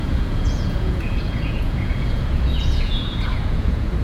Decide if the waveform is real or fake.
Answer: fake